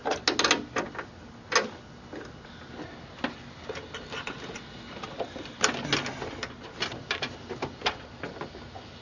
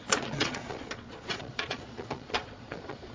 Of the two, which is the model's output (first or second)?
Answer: second